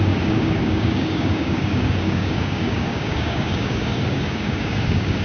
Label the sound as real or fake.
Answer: fake